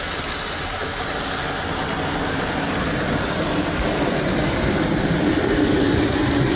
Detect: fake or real real